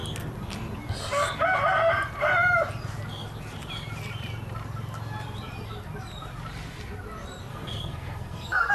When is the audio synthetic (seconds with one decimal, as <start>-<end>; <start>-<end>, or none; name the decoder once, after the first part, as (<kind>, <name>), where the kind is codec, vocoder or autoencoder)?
7.5-8.7 (codec, SNAC)